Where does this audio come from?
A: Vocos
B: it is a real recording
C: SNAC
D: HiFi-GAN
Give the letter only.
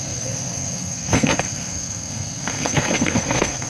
C